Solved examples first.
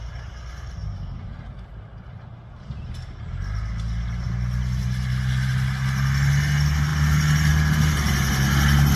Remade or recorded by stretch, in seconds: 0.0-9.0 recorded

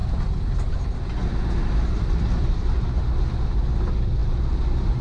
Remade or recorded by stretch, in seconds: 0.0-5.0 recorded